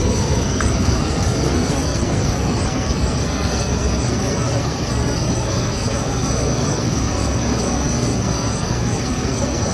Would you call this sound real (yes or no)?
no